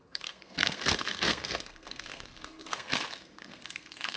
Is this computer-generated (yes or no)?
yes